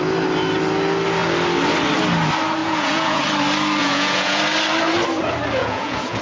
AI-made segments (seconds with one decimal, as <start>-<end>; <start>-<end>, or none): 2.6-3.2; 3.8-4.4; 5.6-6.2